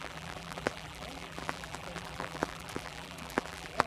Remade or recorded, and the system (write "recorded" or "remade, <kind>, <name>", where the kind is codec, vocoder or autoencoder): remade, vocoder, BigVGAN v2